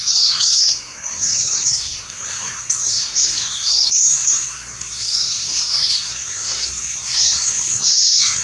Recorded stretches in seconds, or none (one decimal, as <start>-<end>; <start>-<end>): none